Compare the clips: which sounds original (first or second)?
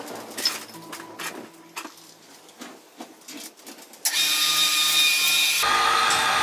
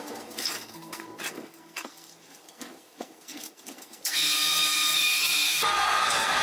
first